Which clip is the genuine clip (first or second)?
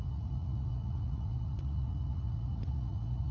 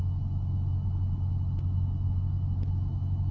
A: second